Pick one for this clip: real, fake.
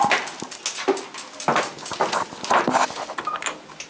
real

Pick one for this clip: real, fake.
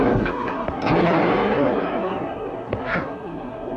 fake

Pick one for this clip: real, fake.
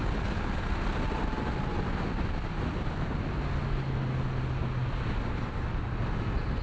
real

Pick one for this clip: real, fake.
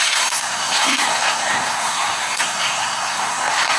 fake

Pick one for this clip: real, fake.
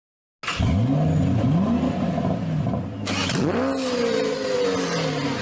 real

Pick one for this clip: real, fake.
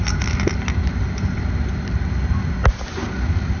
real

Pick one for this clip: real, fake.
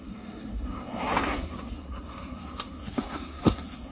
fake